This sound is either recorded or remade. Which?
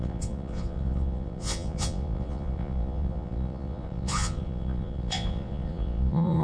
remade